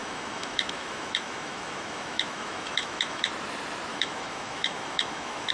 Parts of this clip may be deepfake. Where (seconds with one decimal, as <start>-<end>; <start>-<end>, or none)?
0.0-3.3; 3.9-5.5